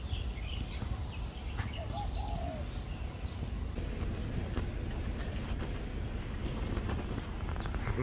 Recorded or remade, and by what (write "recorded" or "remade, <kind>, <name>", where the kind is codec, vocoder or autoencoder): recorded